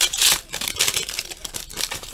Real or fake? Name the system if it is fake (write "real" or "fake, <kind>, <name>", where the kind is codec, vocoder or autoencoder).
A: fake, vocoder, BigVGAN v2